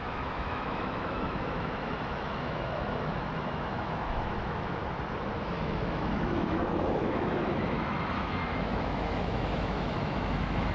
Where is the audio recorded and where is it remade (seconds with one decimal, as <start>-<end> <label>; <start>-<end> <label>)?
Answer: 0.0-4.8 remade; 4.8-5.4 recorded; 5.4-10.7 remade